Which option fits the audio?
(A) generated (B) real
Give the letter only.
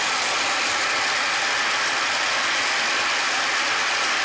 B